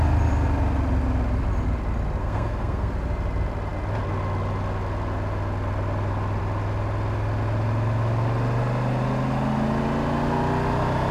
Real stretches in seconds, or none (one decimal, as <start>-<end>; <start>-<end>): 0.0-2.2; 2.9-11.1

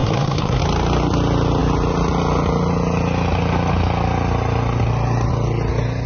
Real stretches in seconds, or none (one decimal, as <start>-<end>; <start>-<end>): 0.6-6.1

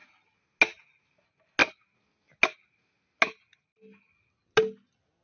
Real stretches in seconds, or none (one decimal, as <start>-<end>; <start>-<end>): 0.0-5.2

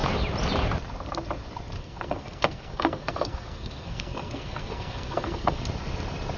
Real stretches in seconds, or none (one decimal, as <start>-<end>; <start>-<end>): 0.0-1.8; 5.6-6.4